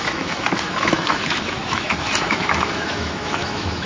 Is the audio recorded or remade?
remade